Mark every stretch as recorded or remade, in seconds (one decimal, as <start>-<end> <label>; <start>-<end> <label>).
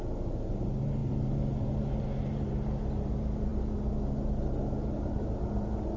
0.0-6.0 recorded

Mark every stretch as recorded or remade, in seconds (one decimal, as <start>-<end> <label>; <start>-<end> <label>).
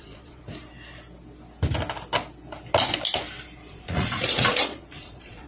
0.0-0.4 remade; 0.4-3.7 recorded; 3.7-5.5 remade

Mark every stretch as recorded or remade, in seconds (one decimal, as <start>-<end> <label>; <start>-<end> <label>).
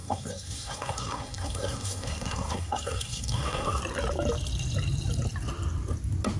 0.0-3.8 remade; 3.8-6.4 recorded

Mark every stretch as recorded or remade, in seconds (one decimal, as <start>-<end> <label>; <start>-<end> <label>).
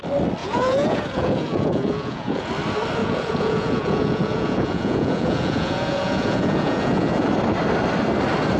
0.0-0.4 recorded; 0.4-2.5 remade; 2.5-3.0 recorded; 3.0-7.3 remade; 7.3-8.6 recorded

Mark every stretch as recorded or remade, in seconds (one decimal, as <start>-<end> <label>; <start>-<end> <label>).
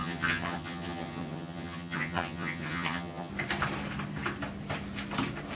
0.0-3.3 remade; 3.3-5.6 recorded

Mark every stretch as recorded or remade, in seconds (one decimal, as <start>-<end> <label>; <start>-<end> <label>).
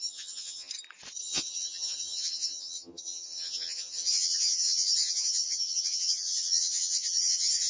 0.0-0.7 remade; 0.7-1.2 recorded; 1.2-7.7 remade